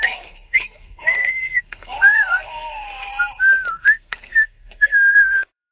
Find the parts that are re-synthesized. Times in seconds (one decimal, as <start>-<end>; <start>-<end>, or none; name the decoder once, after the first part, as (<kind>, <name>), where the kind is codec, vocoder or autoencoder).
0.0-3.1 (codec, SNAC); 3.7-5.7

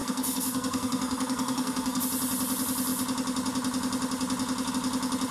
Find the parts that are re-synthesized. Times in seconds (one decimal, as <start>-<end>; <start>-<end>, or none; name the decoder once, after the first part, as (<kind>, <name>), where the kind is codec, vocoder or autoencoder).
0.0-2.0 (codec, SNAC)